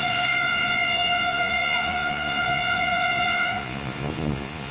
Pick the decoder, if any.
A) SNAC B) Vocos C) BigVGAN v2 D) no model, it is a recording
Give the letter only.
B